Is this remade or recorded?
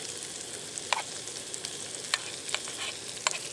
recorded